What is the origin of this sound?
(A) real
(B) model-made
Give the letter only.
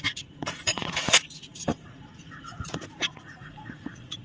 B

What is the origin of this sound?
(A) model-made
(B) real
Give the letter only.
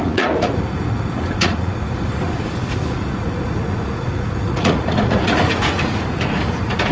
A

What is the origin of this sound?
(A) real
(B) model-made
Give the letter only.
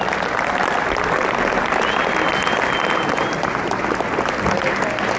A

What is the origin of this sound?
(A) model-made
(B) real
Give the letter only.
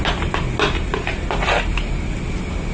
B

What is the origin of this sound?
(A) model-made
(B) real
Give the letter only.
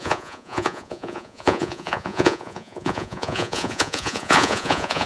A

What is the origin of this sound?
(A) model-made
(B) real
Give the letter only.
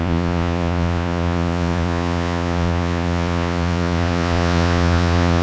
A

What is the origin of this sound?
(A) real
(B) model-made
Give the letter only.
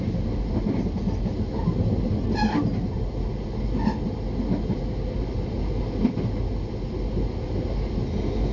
A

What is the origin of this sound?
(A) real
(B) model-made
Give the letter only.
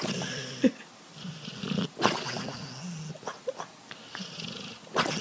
A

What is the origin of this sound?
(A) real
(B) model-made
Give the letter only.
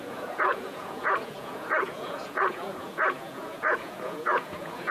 B